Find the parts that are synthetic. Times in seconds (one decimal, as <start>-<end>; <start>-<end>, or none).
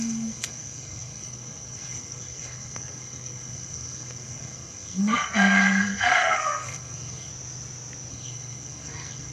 0.0-7.3; 8.1-9.3